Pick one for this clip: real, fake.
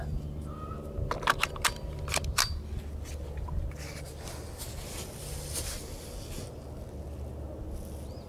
real